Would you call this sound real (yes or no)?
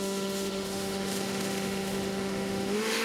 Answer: no